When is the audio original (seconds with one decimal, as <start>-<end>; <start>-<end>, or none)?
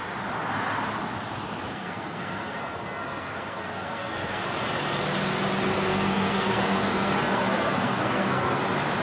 0.0-1.7; 2.6-3.0; 4.4-5.9; 8.6-9.0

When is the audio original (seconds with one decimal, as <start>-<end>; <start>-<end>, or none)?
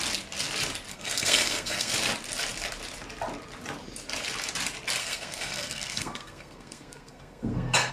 0.0-0.9; 1.9-5.0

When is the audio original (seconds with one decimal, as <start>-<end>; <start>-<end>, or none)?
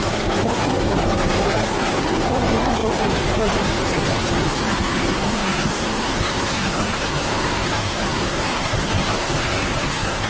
none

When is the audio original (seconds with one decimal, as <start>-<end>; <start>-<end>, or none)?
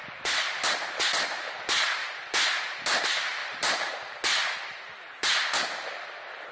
0.0-6.5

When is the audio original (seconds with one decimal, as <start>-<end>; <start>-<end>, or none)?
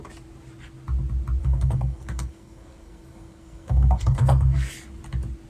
0.0-1.4; 4.7-5.5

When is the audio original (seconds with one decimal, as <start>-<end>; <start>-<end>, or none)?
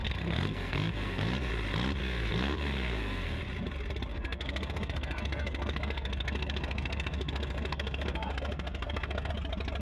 1.5-2.0; 3.4-4.1; 9.3-9.8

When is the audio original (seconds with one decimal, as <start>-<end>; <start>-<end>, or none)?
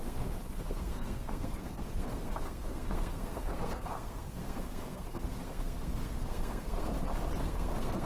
6.9-7.4